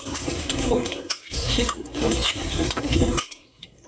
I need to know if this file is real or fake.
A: fake